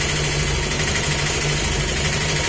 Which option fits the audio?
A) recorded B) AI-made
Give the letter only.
A